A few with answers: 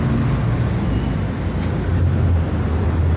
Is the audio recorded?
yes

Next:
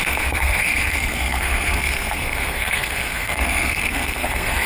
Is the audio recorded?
no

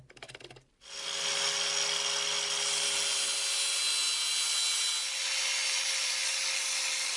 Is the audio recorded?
yes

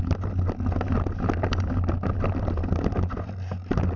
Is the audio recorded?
yes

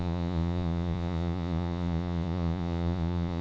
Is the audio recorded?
no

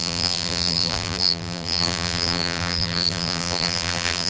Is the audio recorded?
no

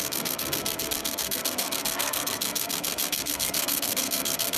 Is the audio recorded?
no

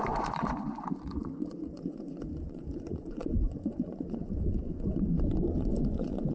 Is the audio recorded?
no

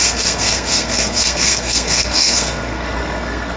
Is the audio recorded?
no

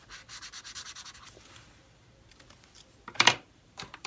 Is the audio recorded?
no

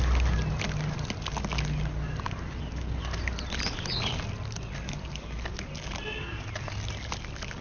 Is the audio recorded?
yes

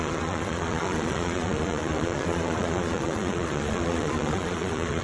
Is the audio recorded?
no